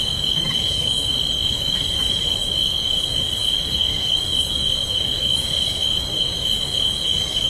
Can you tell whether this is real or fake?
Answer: fake